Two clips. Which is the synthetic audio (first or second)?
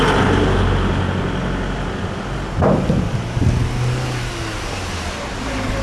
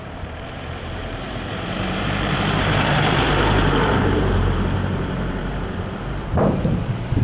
second